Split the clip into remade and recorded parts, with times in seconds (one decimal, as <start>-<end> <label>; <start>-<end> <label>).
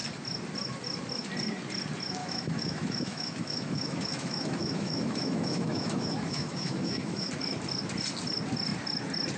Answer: 0.0-2.2 recorded; 2.2-7.3 remade; 7.3-9.4 recorded